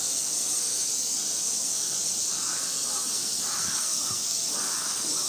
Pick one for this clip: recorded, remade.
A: remade